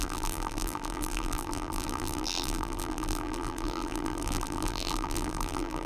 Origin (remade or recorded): remade